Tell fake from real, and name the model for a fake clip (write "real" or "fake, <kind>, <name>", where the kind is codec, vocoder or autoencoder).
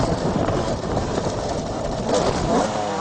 real